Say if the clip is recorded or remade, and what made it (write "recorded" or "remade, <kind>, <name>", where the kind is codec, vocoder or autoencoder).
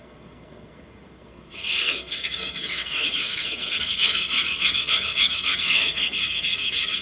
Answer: remade, codec, SNAC